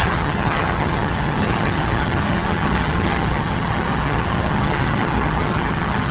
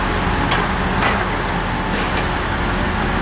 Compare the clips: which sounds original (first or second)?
second